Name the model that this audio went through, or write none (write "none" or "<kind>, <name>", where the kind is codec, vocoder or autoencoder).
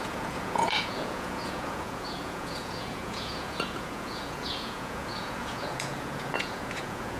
vocoder, Vocos